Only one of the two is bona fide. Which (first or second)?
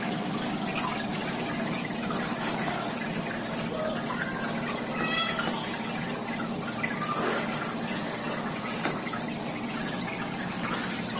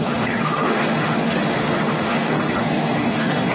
first